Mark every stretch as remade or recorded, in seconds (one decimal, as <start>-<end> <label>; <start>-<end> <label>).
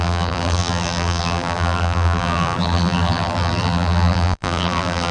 0.0-5.1 remade